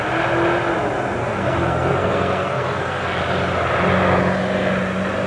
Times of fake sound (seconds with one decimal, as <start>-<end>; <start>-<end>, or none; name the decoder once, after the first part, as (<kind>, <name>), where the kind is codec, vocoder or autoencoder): 1.2-3.2 (codec, SNAC)